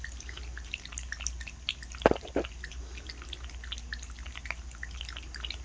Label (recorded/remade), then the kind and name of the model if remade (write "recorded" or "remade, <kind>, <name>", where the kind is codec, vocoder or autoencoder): recorded